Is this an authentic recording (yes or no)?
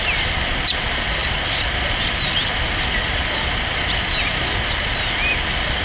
yes